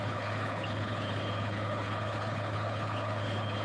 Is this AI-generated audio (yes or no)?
yes